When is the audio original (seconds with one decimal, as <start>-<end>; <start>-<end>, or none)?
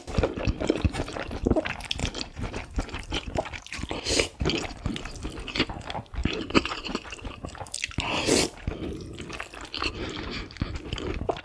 0.0-2.0; 4.4-6.2; 7.6-11.4